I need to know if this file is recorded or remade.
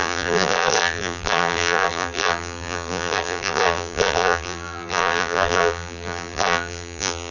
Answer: remade